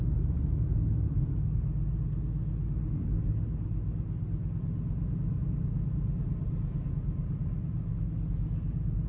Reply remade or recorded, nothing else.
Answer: recorded